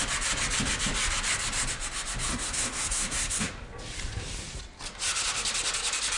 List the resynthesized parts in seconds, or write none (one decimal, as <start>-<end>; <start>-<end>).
2.3-3.5

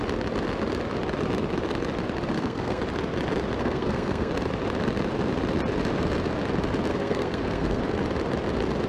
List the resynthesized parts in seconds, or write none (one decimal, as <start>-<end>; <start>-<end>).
2.3-2.8; 3.6-4.3; 6.9-7.8

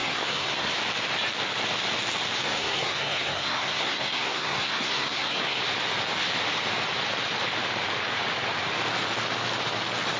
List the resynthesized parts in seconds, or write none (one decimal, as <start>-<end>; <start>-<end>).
0.0-0.7; 2.4-5.6

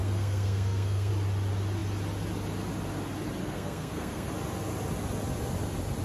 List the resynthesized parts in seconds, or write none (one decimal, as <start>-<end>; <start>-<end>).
0.0-1.1; 3.4-4.3